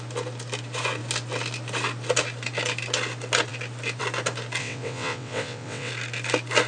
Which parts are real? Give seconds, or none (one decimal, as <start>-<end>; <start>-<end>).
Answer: 0.0-4.6; 5.9-6.7